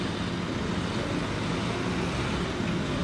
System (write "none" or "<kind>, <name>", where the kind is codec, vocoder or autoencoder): none